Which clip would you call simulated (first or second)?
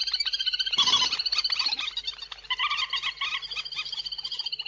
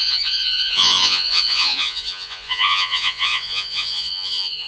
second